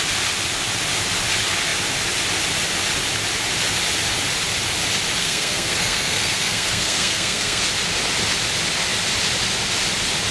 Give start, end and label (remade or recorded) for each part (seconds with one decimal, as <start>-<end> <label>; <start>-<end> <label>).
0.0-5.2 recorded; 5.2-7.6 remade; 7.6-10.3 recorded